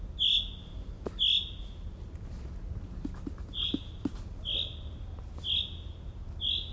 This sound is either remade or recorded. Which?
recorded